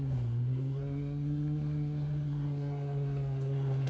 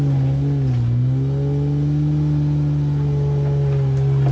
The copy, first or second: first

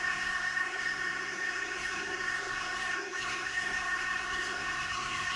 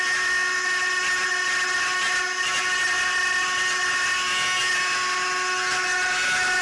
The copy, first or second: first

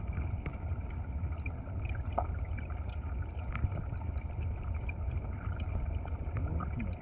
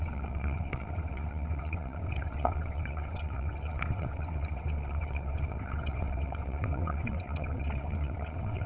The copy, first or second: second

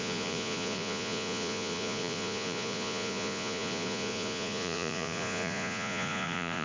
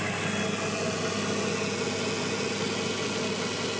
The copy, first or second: first